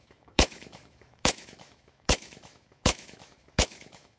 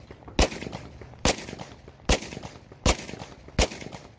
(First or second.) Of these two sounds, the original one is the second